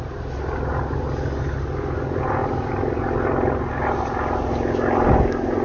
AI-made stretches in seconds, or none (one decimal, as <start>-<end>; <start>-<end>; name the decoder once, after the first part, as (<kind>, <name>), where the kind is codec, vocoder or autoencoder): none